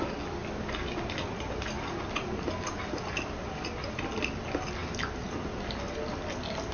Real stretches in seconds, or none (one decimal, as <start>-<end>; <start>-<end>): 0.0-6.7